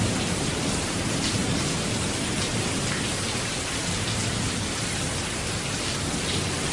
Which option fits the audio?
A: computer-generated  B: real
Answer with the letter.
B